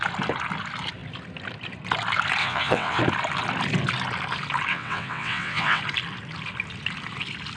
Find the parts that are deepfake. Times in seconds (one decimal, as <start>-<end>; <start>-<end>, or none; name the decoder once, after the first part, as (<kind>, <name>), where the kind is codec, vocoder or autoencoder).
2.4-3.0 (vocoder, WaveNeXt); 4.7-5.8